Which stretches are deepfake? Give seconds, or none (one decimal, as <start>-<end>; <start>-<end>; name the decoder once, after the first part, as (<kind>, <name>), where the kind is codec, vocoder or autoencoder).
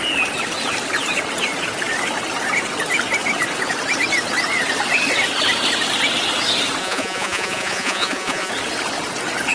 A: 6.8-8.5 (vocoder, Vocos)